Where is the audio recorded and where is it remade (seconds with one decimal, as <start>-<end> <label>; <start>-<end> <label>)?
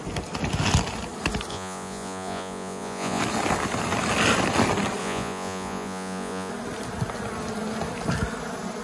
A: 0.0-1.5 recorded; 1.5-3.2 remade; 3.2-5.0 recorded; 5.0-6.5 remade; 6.5-8.8 recorded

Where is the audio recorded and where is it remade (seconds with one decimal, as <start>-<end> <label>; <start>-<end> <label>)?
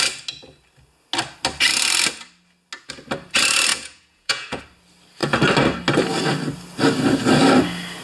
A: 0.0-3.7 recorded; 3.7-4.6 remade; 4.6-8.0 recorded